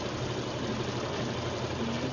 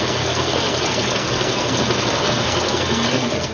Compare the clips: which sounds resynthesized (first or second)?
second